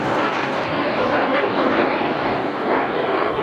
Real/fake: fake